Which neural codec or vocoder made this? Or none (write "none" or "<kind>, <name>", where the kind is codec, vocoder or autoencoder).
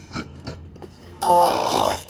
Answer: codec, SNAC